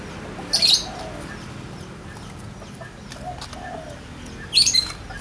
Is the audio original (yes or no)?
yes